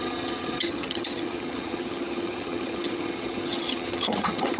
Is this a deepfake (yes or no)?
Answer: yes